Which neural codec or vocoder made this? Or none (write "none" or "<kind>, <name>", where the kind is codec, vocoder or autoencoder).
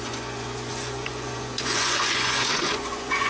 vocoder, Vocos